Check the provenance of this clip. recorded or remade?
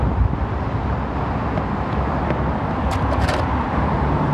remade